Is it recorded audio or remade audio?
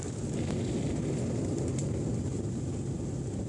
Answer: recorded